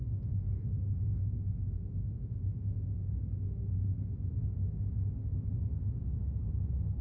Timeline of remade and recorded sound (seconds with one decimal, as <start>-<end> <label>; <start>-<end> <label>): 0.0-4.2 remade; 4.2-7.0 recorded